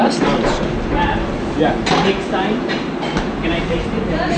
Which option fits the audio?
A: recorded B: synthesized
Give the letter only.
B